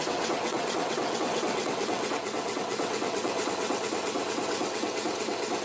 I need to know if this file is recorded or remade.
remade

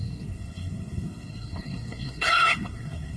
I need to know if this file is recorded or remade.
remade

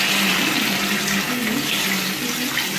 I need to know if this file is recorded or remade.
recorded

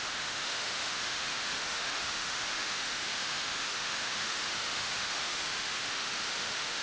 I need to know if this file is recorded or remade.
remade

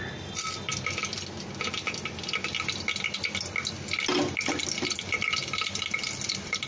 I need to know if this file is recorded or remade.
recorded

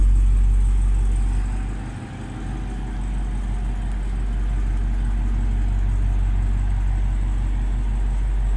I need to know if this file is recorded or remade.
recorded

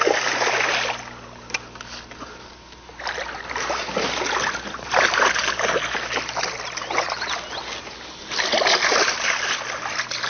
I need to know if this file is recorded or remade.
recorded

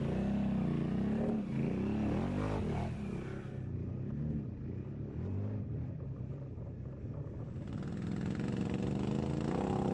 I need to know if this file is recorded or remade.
recorded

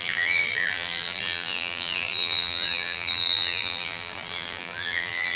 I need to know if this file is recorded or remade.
remade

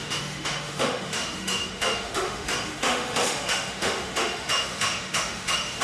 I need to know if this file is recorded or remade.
remade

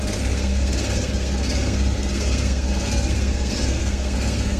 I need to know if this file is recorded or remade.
remade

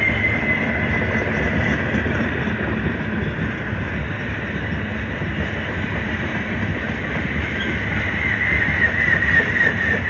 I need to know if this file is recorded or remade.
recorded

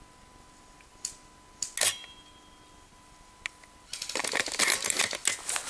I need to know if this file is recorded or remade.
recorded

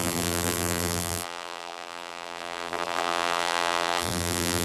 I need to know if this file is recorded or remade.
remade